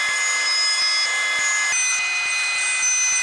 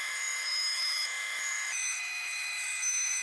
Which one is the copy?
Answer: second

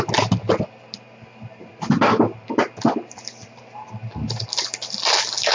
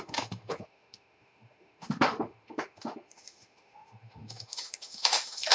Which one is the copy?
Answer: second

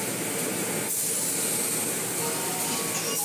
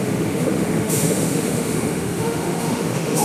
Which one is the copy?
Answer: second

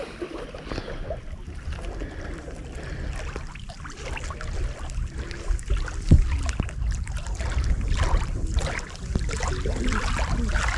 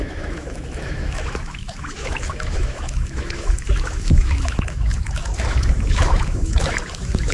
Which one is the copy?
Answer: second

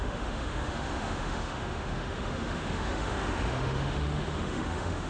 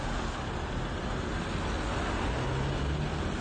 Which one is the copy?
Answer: first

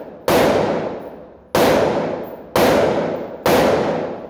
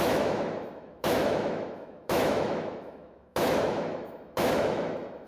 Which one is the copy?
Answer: second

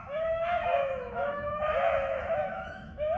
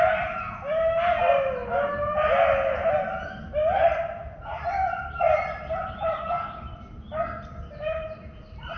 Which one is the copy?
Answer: first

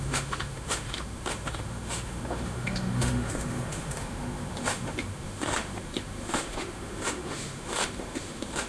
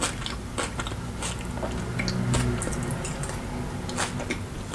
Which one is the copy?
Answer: first